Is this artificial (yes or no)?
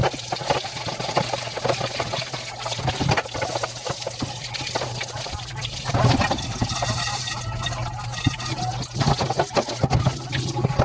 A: no